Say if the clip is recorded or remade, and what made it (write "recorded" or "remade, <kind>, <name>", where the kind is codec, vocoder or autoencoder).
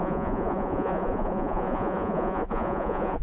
remade, vocoder, Vocos